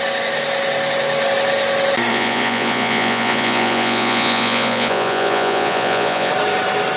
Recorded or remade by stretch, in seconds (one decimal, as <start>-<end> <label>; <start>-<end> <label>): 0.0-2.1 recorded; 2.1-6.3 remade; 6.3-7.0 recorded